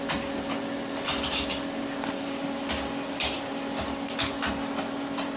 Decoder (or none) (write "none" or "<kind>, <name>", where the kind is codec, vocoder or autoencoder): none